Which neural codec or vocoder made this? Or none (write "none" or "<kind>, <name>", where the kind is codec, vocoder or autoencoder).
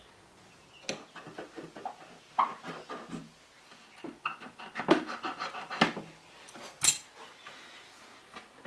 none